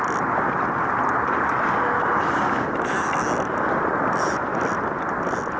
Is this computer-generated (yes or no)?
no